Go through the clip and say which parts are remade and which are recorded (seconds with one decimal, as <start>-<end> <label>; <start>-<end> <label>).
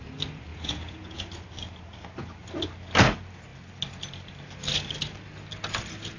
0.0-0.5 recorded; 0.5-1.3 remade; 1.3-6.2 recorded